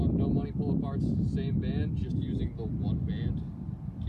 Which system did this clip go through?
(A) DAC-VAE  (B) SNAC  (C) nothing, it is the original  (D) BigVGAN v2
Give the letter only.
C